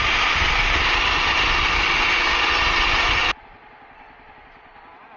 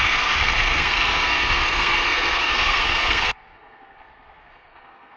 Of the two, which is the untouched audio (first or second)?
first